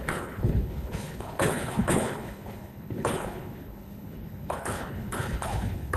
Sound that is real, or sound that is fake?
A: fake